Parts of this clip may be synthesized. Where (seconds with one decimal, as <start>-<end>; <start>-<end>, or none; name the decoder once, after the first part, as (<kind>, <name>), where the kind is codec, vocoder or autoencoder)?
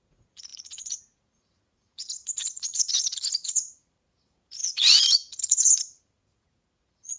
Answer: 0.0-7.2 (vocoder, Vocos)